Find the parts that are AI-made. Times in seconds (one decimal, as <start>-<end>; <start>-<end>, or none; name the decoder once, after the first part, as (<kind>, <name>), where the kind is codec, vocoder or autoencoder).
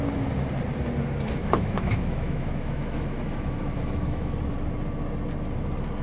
1.4-4.3 (autoencoder, DAC-VAE)